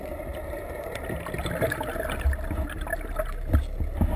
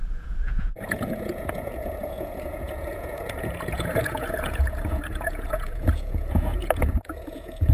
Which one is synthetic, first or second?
second